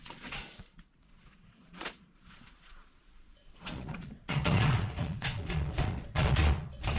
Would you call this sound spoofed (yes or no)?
yes